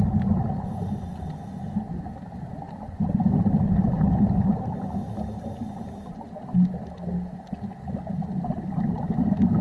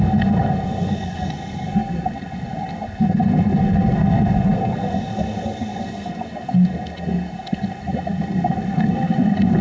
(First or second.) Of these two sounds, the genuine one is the first